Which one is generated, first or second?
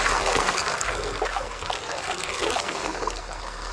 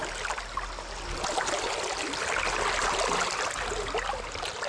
first